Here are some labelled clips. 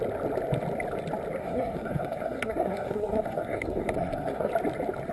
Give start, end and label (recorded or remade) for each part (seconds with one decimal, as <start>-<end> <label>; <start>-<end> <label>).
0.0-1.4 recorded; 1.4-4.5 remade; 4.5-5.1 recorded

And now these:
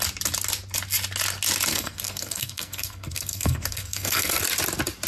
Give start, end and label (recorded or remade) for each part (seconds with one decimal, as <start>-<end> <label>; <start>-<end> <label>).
0.0-1.7 recorded; 1.7-4.4 remade; 4.4-5.1 recorded

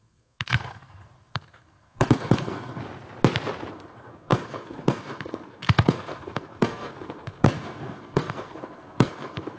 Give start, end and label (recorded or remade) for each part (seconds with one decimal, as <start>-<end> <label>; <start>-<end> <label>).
0.0-2.8 remade; 2.8-3.7 recorded; 3.7-9.6 remade